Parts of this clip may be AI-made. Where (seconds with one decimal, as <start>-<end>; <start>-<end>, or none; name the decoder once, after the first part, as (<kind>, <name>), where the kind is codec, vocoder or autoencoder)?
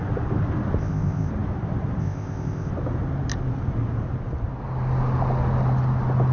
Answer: 0.8-1.3 (codec, ZipCodec); 2.0-2.7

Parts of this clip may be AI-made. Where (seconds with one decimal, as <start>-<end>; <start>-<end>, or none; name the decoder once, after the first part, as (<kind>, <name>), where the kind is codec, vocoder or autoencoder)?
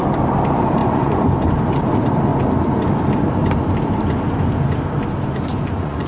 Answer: 0.8-1.3 (vocoder, Vocos); 5.5-6.1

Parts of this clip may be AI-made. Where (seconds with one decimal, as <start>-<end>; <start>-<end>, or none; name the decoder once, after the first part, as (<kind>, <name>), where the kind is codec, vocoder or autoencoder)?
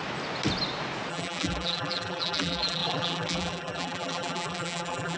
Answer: 1.1-5.2 (vocoder, BigVGAN v2)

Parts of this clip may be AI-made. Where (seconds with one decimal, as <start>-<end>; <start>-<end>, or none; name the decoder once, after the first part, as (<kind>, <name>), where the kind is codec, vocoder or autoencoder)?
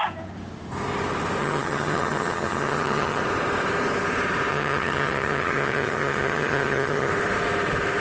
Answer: 1.4-3.2 (vocoder, HiFi-GAN); 4.5-7.1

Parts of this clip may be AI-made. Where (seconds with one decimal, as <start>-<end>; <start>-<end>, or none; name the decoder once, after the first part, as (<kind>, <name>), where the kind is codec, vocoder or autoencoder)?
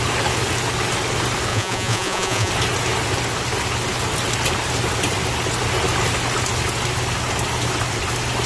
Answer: 1.5-2.5 (vocoder, Vocos)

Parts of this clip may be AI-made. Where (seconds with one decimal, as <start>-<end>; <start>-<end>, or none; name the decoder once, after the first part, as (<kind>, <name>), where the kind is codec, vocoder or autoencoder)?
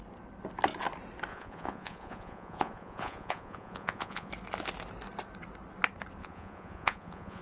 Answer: 1.3-4.3 (vocoder, Vocos); 6.2-7.4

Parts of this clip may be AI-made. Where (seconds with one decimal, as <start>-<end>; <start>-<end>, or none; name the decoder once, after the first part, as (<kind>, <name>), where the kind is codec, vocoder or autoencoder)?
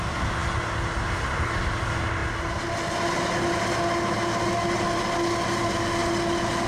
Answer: none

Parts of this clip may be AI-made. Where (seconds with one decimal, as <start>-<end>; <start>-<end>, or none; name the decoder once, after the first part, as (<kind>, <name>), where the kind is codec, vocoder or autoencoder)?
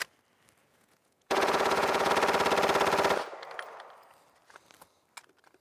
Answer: 0.6-2.1 (vocoder, Vocos)